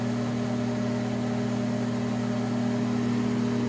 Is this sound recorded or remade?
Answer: recorded